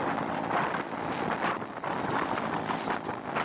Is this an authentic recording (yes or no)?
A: yes